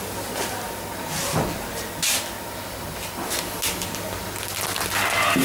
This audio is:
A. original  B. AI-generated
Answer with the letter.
A